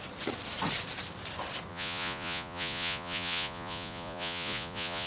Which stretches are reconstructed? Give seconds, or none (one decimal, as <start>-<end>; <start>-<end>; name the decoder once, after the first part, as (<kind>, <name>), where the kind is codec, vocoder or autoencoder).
1.7-5.1 (vocoder, Vocos)